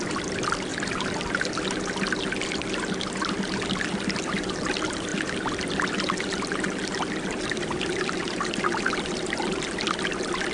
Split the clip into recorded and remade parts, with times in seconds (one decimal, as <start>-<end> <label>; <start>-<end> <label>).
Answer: 0.0-0.7 remade; 0.7-3.7 recorded; 3.7-10.5 remade